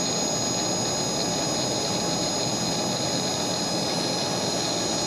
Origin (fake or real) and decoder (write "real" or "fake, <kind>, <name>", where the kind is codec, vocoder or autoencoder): real